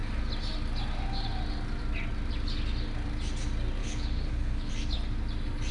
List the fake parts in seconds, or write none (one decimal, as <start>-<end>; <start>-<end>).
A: 3.8-4.7